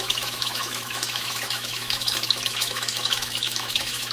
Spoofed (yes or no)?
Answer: yes